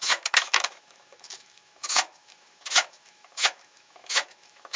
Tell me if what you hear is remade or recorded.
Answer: remade